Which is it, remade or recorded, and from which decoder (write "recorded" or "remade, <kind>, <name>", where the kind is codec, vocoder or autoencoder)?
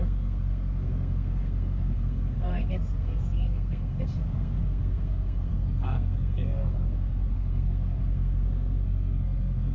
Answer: remade, codec, SNAC